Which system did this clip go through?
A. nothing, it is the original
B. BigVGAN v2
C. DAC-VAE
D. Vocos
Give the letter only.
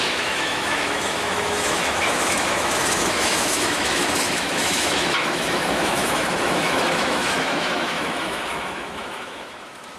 C